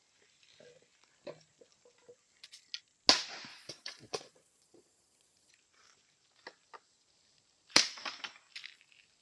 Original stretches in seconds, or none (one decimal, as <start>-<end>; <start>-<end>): 0.0-3.5; 5.5-9.2